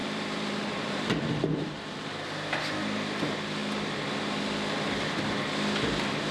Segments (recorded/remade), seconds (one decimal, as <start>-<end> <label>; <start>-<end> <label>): 0.0-2.1 remade; 2.1-6.3 recorded